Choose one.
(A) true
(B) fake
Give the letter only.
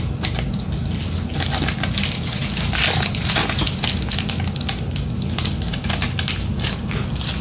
A